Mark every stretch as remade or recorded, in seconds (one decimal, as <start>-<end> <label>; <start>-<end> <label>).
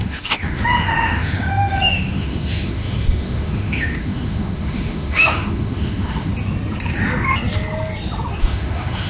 0.0-6.3 remade; 6.3-8.4 recorded; 8.4-9.1 remade